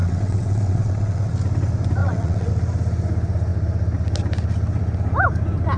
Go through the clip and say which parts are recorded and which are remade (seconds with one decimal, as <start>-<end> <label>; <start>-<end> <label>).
0.0-1.3 remade; 1.3-2.0 recorded; 2.0-2.5 remade; 2.5-5.8 recorded